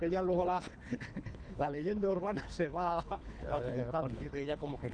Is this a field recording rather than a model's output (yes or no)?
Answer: no